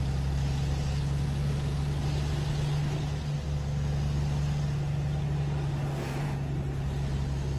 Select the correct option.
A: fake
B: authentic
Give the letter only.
B